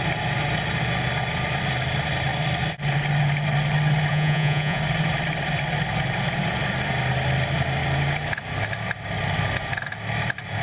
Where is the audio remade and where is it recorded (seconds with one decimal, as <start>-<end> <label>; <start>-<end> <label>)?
0.0-4.1 recorded; 4.1-4.8 remade; 4.8-10.6 recorded